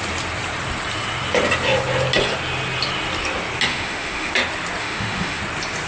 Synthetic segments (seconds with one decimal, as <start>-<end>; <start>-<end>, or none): 3.7-4.3; 4.8-5.4